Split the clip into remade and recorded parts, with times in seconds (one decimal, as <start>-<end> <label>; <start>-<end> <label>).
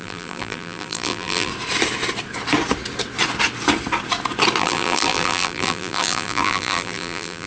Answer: 0.0-1.5 remade; 1.5-4.6 recorded; 4.6-7.5 remade